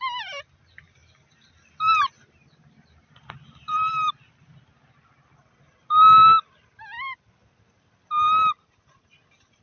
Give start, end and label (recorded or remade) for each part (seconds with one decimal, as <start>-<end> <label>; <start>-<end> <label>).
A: 0.0-9.6 recorded